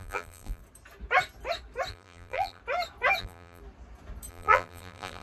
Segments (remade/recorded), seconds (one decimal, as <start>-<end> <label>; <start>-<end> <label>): 0.0-0.6 remade; 0.6-1.9 recorded; 1.9-2.6 remade; 2.6-3.2 recorded; 3.2-3.6 remade; 3.6-4.3 recorded; 4.3-5.2 remade